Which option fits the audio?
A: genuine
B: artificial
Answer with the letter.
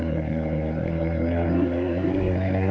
B